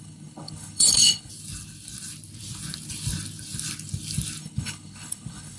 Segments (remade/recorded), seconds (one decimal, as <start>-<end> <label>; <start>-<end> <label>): 0.0-1.3 remade; 1.3-4.4 recorded; 4.4-5.6 remade

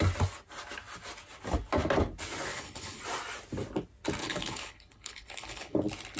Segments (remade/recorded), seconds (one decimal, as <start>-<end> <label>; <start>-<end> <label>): 0.0-2.5 recorded; 2.5-3.0 remade; 3.0-4.2 recorded; 4.2-5.8 remade; 5.8-6.2 recorded

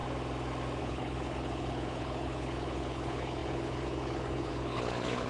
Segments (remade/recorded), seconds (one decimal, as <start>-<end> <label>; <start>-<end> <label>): 0.0-0.8 recorded; 0.8-5.3 remade

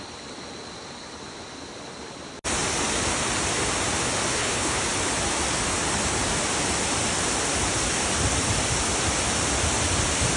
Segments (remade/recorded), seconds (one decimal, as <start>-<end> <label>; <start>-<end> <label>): 0.0-4.3 recorded; 4.3-4.8 remade; 4.8-10.4 recorded

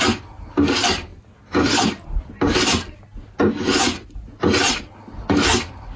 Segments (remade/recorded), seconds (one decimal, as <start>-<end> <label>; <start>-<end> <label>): 0.0-6.0 recorded